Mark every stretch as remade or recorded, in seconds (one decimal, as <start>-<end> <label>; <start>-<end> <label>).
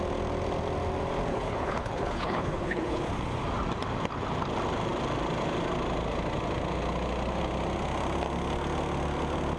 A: 0.0-1.3 recorded; 1.3-3.0 remade; 3.0-9.6 recorded